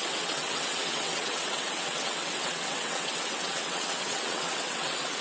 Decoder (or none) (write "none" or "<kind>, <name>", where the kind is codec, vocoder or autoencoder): vocoder, WaveNeXt